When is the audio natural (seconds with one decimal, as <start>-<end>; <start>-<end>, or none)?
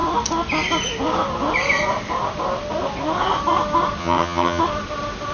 0.0-4.0; 4.6-5.3